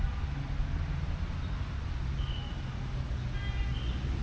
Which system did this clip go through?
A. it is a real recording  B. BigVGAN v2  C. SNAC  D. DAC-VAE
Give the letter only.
A